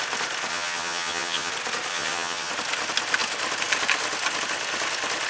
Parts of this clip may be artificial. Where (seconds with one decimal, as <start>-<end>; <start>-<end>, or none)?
0.5-1.5; 1.9-2.5